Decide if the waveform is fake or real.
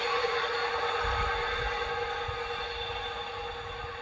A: real